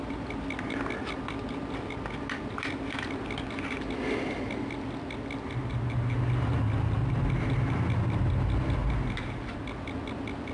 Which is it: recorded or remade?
recorded